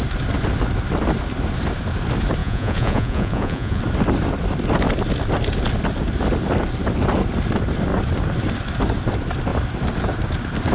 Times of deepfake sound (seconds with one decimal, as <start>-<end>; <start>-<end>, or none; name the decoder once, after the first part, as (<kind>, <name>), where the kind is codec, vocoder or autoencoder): 2.4-3.8 (vocoder, Vocos)